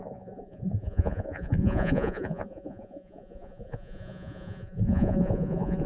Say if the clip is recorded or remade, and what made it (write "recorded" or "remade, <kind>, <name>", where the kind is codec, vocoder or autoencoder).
remade, vocoder, Vocos